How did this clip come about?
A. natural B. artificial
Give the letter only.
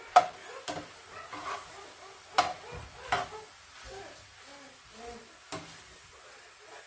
A